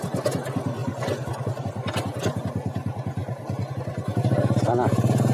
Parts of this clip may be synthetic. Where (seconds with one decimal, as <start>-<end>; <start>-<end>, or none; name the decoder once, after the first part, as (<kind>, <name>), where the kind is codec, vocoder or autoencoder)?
0.8-2.4 (vocoder, BigVGAN v2)